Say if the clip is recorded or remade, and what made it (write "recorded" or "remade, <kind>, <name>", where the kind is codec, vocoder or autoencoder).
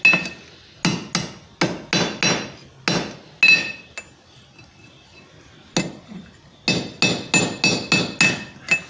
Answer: recorded